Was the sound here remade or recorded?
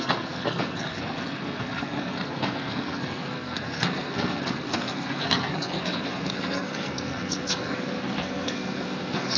remade